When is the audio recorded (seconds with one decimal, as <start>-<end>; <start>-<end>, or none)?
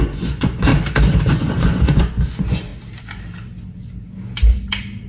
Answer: 0.7-1.3; 2.7-5.1